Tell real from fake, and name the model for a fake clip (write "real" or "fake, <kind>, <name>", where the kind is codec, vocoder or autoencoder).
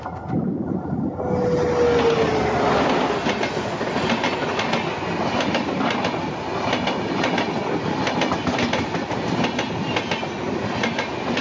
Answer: real